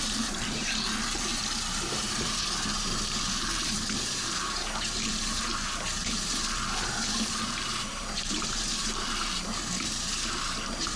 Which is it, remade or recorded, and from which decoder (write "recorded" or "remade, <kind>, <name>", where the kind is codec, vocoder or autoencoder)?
remade, vocoder, BigVGAN v2